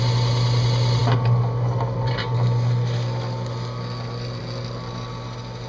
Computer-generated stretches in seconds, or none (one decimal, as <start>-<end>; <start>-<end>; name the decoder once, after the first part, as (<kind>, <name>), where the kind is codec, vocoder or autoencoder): none